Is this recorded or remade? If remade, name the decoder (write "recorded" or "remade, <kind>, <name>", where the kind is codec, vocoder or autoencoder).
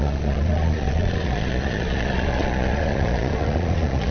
remade, vocoder, Vocos